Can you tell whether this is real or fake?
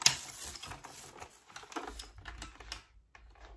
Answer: real